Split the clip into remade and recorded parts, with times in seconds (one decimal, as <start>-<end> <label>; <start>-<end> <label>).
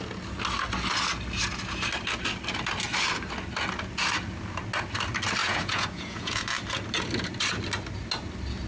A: 0.0-5.4 recorded; 5.4-6.4 remade; 6.4-8.7 recorded